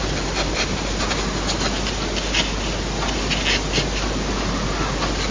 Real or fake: real